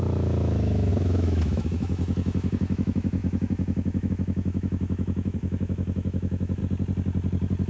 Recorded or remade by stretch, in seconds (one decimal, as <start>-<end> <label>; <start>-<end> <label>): 0.0-6.6 remade; 6.6-7.7 recorded